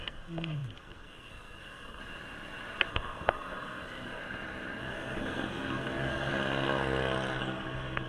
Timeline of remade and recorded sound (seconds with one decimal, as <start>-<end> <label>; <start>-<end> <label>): 0.0-2.0 remade; 2.0-2.9 recorded; 2.9-4.2 remade; 4.2-4.8 recorded; 4.8-6.3 remade; 6.3-7.4 recorded; 7.4-8.1 remade

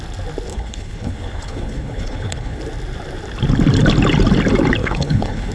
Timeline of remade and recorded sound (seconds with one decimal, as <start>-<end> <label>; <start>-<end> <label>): 0.0-0.5 recorded; 0.5-2.6 remade; 2.6-4.8 recorded; 4.8-5.5 remade

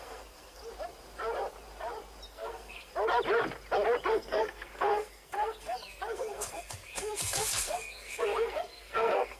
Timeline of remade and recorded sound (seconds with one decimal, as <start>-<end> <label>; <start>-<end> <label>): 0.0-0.6 remade; 0.6-2.3 recorded; 2.3-2.9 remade; 2.9-4.1 recorded; 4.1-9.4 remade

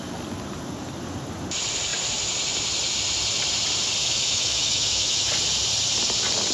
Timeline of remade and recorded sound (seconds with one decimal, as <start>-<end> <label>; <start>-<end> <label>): 0.0-4.0 recorded; 4.0-5.3 remade; 5.3-6.5 recorded

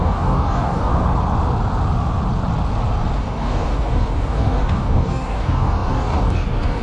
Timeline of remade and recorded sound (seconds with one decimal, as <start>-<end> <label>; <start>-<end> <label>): 0.0-0.9 remade; 0.9-3.2 recorded; 3.2-6.8 remade

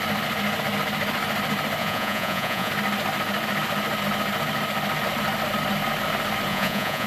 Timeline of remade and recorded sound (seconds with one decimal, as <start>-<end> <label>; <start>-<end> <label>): 0.0-1.8 recorded; 1.8-2.7 remade; 2.7-6.5 recorded; 6.5-7.1 remade

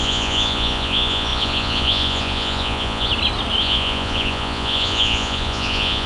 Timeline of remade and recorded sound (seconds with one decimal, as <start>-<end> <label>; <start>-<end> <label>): 0.0-3.1 remade; 3.1-3.6 recorded; 3.6-6.1 remade